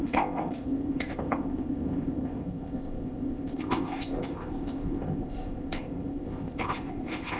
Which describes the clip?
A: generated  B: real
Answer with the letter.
A